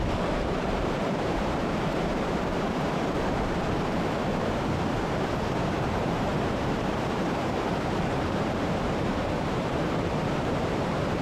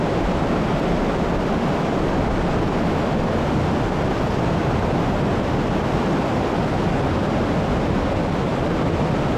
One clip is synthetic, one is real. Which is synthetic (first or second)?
first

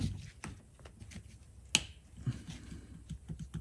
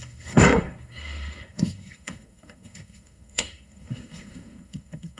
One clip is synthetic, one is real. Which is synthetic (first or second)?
second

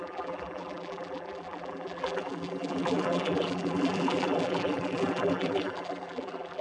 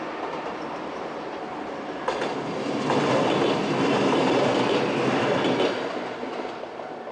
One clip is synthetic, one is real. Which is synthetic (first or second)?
first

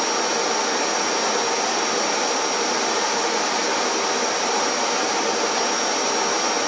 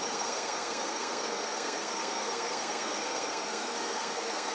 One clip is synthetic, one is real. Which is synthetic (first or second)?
second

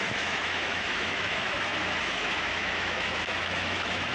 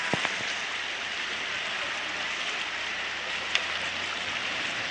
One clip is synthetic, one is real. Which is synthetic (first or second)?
first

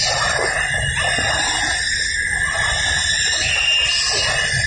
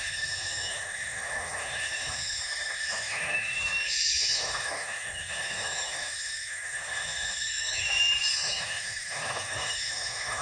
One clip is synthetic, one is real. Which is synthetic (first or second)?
second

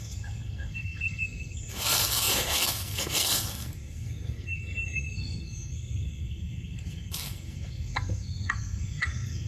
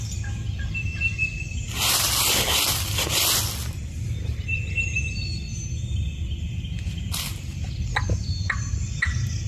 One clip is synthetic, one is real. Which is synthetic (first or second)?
first